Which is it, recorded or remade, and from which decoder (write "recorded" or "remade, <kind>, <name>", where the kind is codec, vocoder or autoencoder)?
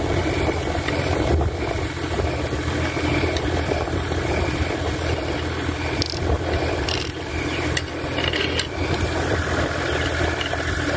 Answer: recorded